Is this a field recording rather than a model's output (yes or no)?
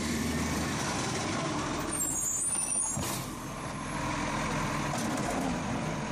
no